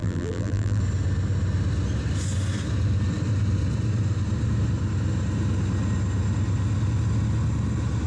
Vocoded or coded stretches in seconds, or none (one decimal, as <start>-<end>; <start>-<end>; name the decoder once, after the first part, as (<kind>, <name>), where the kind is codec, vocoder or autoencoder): 0.0-0.8 (vocoder, BigVGAN v2)

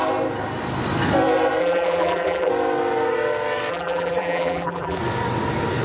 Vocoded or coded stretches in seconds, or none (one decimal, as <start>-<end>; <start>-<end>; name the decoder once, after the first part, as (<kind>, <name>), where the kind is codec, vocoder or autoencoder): 1.6-2.5 (vocoder, BigVGAN v2); 3.7-5.0

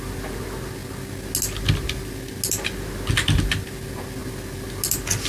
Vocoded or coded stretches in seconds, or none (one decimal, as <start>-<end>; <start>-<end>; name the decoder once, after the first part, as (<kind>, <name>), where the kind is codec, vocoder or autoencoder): none

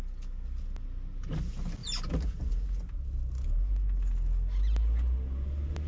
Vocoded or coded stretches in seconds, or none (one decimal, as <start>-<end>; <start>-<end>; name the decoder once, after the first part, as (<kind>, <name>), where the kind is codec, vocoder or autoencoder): none